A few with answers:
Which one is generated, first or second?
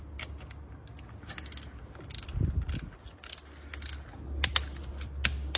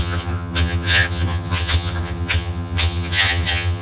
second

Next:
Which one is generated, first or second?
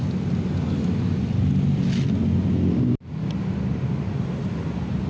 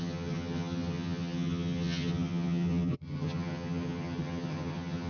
second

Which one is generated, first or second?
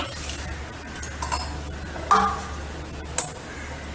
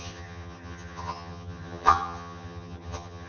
second